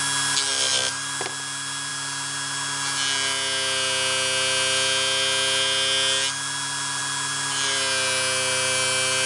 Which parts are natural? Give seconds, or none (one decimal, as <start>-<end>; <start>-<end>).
0.0-9.3